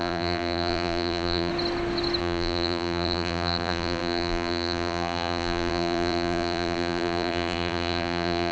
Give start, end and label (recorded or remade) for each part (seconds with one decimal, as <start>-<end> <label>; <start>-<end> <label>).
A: 0.0-1.5 remade; 1.5-2.2 recorded; 2.2-8.5 remade